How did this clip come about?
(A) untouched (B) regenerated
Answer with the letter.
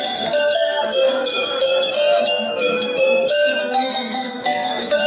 B